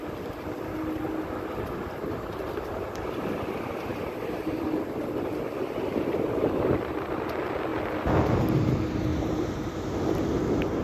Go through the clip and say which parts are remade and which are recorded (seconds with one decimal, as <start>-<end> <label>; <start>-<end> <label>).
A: 0.0-3.9 recorded; 3.9-4.7 remade; 4.7-9.1 recorded; 9.1-10.3 remade; 10.3-10.8 recorded